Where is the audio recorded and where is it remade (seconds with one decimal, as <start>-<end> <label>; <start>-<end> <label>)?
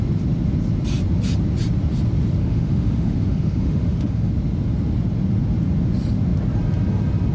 0.0-2.4 recorded; 2.4-4.3 remade; 4.3-7.3 recorded